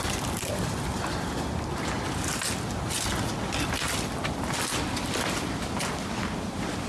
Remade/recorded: recorded